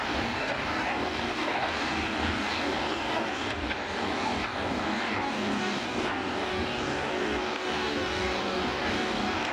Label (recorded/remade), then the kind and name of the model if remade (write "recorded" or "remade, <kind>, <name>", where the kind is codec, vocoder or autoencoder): remade, codec, DAC